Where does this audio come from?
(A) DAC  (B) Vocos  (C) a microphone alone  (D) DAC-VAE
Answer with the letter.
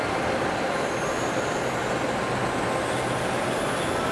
C